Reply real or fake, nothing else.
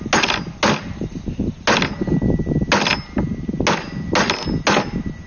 real